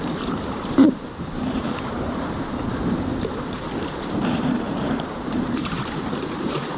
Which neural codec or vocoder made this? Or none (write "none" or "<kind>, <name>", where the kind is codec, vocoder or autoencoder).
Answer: vocoder, BigVGAN v2